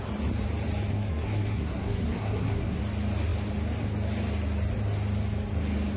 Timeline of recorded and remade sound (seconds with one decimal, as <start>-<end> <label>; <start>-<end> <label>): 0.0-0.9 recorded; 0.9-2.8 remade; 2.8-6.0 recorded